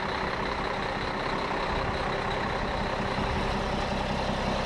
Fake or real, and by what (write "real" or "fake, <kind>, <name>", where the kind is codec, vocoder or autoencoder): real